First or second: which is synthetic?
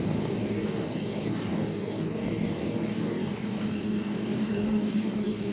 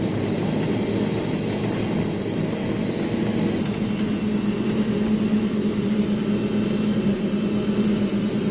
first